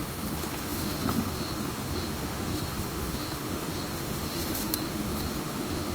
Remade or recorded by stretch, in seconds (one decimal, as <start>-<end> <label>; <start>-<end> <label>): 0.0-5.9 remade